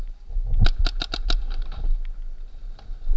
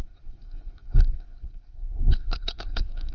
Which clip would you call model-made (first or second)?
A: second